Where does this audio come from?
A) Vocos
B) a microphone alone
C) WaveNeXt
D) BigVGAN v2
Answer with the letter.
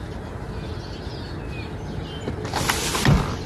B